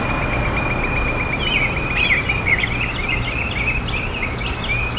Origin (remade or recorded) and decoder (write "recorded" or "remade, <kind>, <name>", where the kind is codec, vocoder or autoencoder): recorded